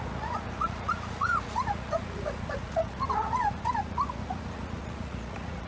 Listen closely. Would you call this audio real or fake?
fake